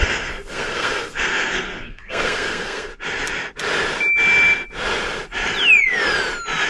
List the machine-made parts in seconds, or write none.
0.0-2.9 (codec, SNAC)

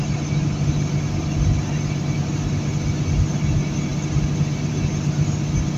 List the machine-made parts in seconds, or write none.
none

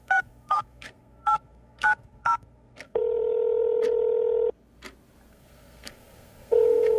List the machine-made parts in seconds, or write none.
0.0-3.0 (codec, SNAC); 5.3-7.0